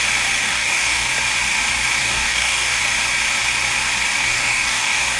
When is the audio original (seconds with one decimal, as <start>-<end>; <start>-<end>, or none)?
0.0-0.4; 1.1-2.0; 2.8-4.2